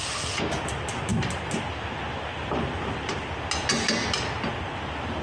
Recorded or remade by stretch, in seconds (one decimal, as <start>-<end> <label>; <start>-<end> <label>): 0.0-5.2 recorded